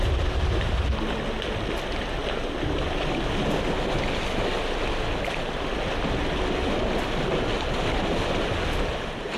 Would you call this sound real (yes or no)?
yes